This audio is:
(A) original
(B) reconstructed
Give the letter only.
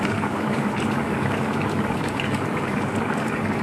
B